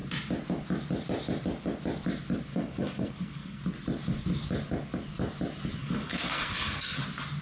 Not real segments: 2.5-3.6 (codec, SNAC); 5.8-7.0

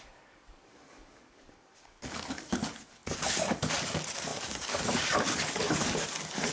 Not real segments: 0.0-6.5 (codec, DAC)

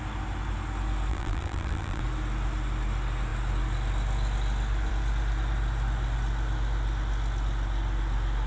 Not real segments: 1.1-2.0 (vocoder, BigVGAN v2)

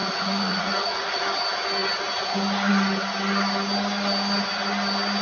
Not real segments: 0.0-1.2 (vocoder, Vocos)

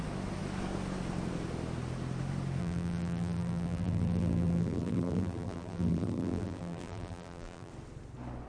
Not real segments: 2.6-7.7 (vocoder, BigVGAN v2)

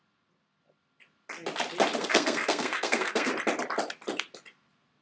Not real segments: 2.0-3.3 (codec, SNAC)

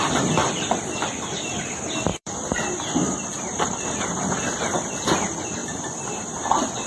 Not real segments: 0.4-1.7 (vocoder, BigVGAN v2); 2.1-4.6; 5.6-6.9

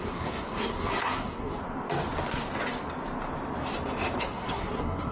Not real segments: 0.0-1.6 (codec, SNAC); 4.2-5.1